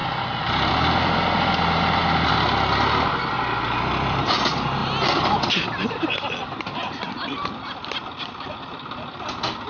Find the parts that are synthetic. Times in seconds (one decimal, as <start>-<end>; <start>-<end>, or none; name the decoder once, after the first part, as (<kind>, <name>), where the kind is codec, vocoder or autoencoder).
none